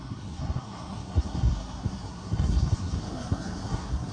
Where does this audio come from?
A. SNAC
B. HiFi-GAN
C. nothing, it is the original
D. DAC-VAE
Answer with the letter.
A